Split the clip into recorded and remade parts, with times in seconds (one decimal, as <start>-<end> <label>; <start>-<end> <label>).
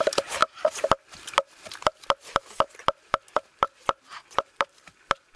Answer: 0.0-5.4 recorded